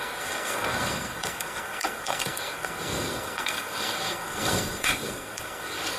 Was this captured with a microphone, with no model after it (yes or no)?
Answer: no